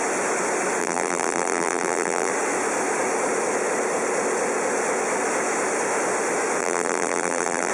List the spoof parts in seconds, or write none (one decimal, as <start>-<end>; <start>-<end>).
0.8-2.3; 6.6-7.7